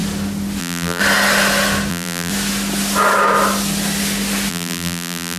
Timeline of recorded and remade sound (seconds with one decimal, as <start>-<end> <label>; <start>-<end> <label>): 0.0-0.6 recorded; 0.6-1.0 remade; 1.0-1.9 recorded; 1.9-2.3 remade; 2.3-4.5 recorded; 4.5-5.4 remade